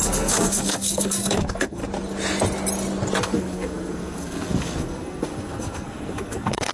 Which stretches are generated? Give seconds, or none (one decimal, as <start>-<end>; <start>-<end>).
0.0-1.8; 3.2-6.7